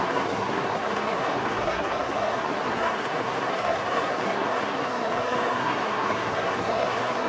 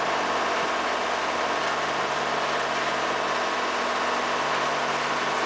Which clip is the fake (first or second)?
first